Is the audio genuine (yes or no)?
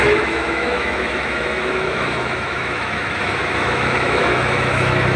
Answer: no